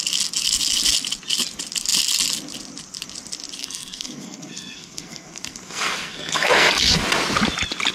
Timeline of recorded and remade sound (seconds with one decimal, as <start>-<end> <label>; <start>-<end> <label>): 0.0-3.6 recorded; 3.6-7.0 remade; 7.0-7.9 recorded